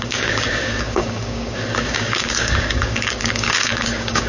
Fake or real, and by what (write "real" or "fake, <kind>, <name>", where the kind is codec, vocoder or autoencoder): fake, codec, DAC